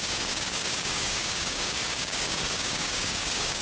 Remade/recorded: remade